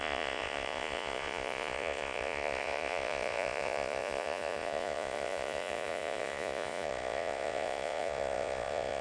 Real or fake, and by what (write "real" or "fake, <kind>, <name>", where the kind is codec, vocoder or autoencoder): fake, vocoder, Vocos